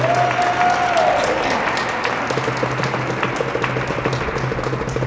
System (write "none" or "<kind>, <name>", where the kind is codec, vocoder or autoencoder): none